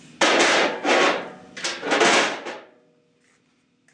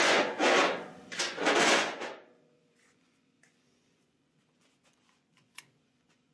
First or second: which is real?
first